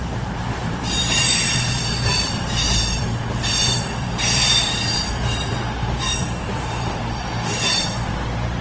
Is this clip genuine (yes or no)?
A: no